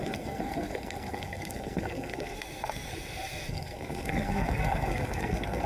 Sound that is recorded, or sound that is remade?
remade